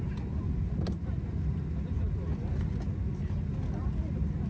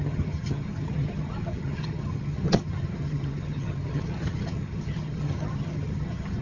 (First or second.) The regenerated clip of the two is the second